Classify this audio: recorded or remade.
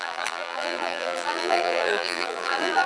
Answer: remade